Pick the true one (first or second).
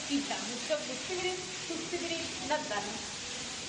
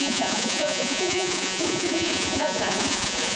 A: first